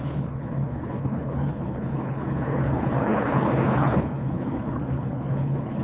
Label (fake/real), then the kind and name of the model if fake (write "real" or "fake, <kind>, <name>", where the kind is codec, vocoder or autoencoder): fake, codec, HILCodec